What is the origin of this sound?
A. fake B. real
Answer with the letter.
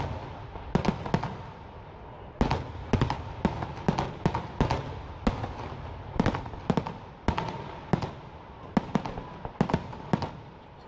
B